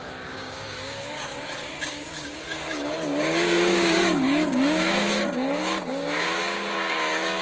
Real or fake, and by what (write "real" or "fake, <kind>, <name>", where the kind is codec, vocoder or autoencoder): fake, codec, DAC